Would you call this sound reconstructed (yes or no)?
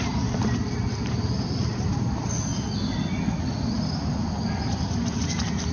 no